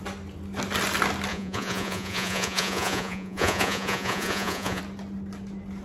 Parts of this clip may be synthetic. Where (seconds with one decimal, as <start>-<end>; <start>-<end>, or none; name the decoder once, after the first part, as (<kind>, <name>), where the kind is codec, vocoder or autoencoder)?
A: 1.3-4.8 (vocoder, Vocos)